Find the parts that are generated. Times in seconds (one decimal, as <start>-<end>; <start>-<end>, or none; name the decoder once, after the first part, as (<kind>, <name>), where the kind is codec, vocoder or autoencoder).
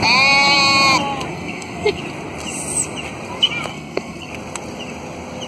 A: 1.3-2.0 (codec, SNAC); 3.7-4.3